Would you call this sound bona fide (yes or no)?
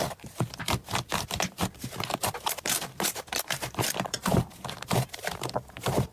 no